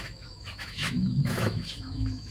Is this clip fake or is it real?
fake